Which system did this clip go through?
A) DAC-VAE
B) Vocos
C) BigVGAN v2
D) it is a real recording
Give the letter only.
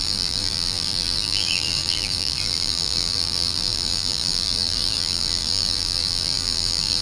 C